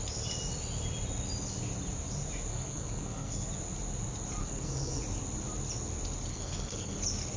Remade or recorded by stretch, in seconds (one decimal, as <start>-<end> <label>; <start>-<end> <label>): 0.0-2.5 recorded; 2.5-3.5 remade; 3.5-4.4 recorded; 4.4-5.0 remade; 5.0-6.3 recorded; 6.3-7.0 remade; 7.0-7.4 recorded